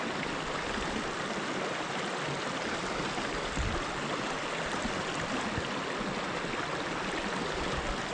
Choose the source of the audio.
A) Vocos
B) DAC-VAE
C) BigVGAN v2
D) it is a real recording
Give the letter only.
D